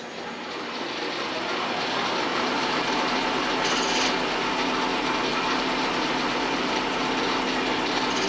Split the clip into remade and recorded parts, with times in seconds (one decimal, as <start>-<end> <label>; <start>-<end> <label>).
0.0-2.3 recorded; 2.3-3.4 remade; 3.4-5.3 recorded; 5.3-6.8 remade; 6.8-8.3 recorded